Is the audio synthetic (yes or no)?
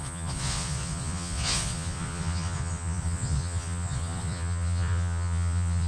yes